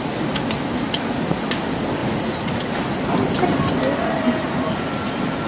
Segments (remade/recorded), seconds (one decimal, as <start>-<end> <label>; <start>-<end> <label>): 0.0-2.0 recorded; 2.0-2.6 remade; 2.6-5.5 recorded